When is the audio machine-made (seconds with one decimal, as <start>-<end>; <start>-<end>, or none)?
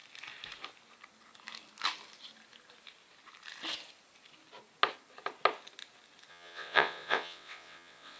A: 6.3-8.2